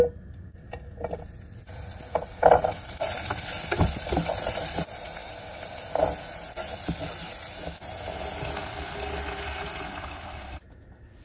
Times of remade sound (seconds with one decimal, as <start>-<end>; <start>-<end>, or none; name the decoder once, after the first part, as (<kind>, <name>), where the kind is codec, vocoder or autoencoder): none